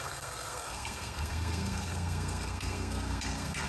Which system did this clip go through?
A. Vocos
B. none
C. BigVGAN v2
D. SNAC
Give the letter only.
D